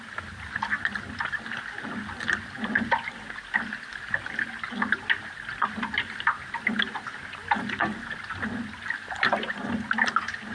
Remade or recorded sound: recorded